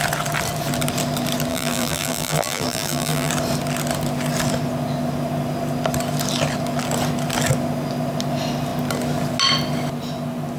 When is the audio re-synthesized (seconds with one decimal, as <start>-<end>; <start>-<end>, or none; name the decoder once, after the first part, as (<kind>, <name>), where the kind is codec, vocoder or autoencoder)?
1.5-3.3 (vocoder, BigVGAN v2)

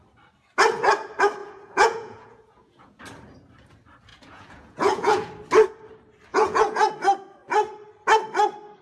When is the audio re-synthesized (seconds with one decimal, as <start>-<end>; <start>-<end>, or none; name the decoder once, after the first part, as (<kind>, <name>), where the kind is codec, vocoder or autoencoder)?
1.4-3.0 (vocoder, Vocos); 4.1-5.3; 6.3-6.9

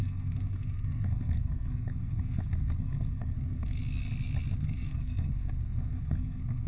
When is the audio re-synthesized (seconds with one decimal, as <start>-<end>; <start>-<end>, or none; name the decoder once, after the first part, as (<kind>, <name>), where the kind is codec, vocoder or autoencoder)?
0.0-3.8 (codec, SNAC); 4.6-6.7

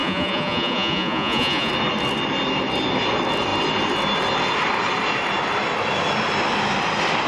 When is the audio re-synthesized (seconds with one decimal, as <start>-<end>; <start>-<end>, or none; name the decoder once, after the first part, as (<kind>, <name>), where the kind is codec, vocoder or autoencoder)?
0.0-1.7 (vocoder, Vocos)

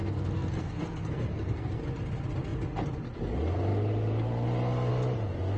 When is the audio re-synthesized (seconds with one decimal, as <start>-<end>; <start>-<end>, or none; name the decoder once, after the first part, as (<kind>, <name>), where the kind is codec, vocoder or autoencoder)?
0.0-1.8 (codec, SNAC)